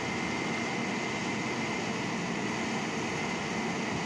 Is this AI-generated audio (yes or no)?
no